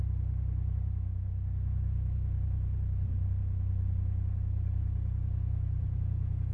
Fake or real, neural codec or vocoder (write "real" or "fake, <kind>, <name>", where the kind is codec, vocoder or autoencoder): fake, vocoder, Vocos